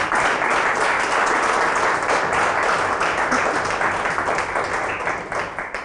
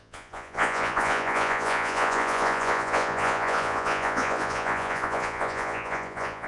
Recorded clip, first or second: first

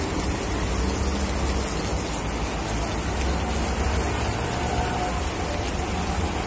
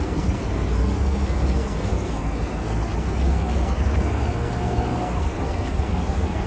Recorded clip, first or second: first